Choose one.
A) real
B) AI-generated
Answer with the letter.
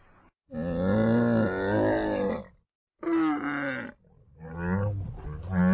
A